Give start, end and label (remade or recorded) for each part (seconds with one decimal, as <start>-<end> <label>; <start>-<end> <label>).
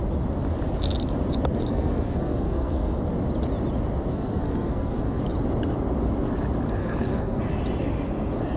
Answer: 0.0-1.7 recorded; 1.7-3.0 remade; 3.0-4.1 recorded; 4.1-5.2 remade; 5.2-6.8 recorded; 6.8-7.4 remade; 7.4-8.6 recorded